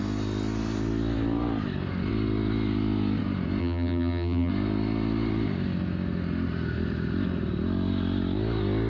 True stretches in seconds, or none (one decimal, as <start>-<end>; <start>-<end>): 0.0-3.6; 4.5-8.9